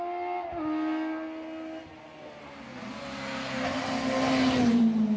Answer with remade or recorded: recorded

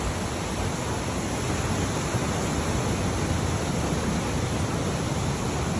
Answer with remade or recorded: recorded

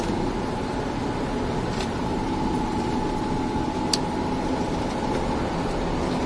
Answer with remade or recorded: recorded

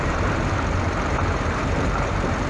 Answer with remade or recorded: remade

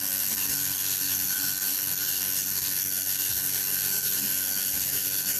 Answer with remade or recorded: remade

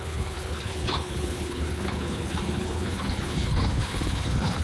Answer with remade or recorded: remade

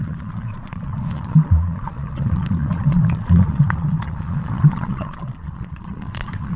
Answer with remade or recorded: remade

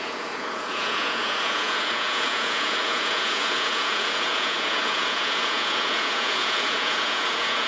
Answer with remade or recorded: remade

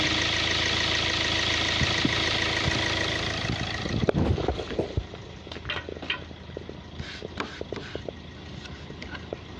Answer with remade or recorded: recorded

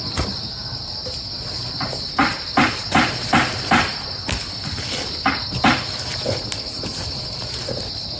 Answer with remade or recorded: recorded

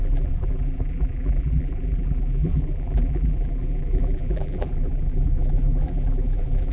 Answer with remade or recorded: remade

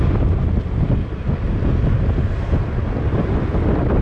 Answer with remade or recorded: recorded